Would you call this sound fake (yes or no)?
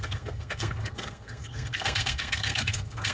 yes